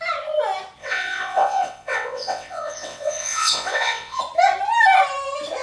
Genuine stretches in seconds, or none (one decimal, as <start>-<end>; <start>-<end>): 0.0-0.8; 4.2-5.6